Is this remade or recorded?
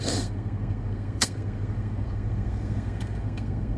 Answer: remade